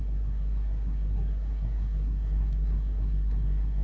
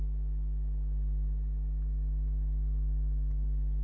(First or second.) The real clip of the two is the second